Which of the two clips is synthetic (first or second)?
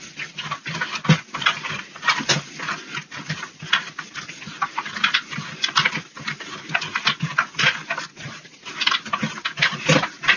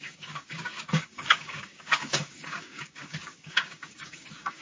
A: second